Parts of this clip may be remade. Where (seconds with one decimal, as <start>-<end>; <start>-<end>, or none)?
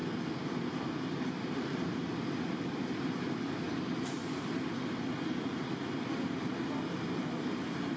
0.0-8.0